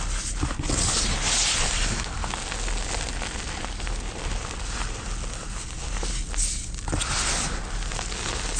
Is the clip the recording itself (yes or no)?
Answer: yes